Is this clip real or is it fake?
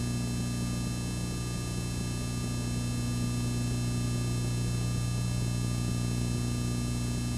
real